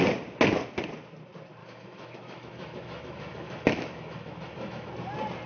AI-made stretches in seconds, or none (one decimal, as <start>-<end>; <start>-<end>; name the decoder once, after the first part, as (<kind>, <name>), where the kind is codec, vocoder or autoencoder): 1.6-4.9 (autoencoder, DAC-VAE)